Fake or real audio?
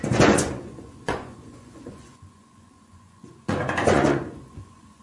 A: fake